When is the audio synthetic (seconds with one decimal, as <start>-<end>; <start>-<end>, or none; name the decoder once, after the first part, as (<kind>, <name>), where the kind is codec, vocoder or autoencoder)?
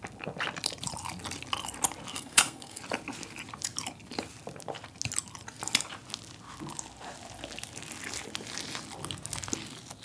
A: 2.1-2.8 (codec, SNAC)